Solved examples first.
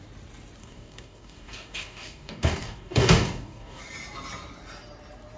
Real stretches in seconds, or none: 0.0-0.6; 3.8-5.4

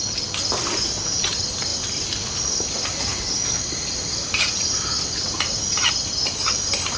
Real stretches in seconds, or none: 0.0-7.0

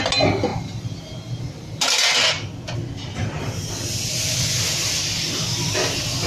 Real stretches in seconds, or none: 0.0-0.5; 1.4-3.1; 3.7-6.3

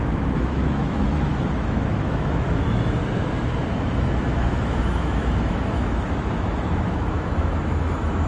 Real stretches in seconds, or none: 3.0-3.8